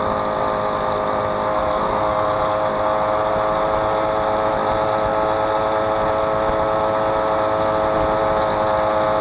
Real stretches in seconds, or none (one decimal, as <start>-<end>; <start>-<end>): 0.0-9.2

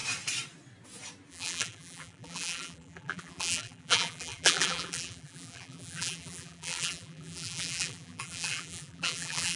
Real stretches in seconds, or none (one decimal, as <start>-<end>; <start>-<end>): 0.0-1.3

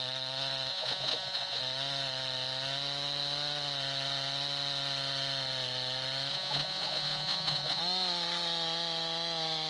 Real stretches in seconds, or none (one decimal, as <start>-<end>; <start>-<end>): 0.0-0.7; 1.6-6.3; 7.8-9.7

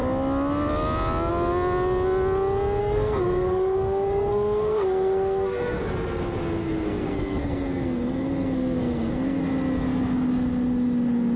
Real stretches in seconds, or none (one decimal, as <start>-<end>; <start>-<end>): 0.0-2.8; 5.8-6.6; 9.4-11.4

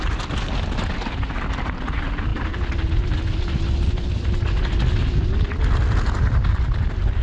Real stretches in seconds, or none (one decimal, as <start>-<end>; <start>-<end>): 0.0-2.3; 2.9-7.2

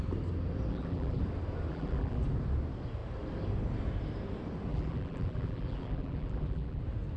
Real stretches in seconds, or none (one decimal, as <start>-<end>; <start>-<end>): 0.0-0.7; 1.2-1.7; 2.2-4.7; 6.8-7.2

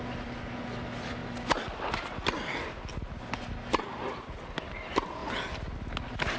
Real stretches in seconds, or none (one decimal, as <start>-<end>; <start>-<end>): 0.0-6.4